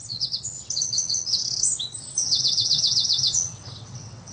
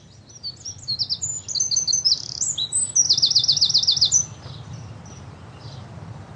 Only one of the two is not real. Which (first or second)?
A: first